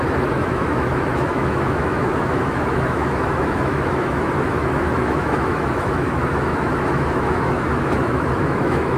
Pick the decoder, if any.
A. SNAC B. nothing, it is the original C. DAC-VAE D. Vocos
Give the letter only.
C